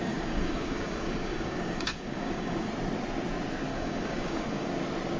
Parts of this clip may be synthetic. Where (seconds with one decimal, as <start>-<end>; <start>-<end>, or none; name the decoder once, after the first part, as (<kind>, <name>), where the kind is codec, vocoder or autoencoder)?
0.0-2.7 (codec, DAC); 3.7-4.7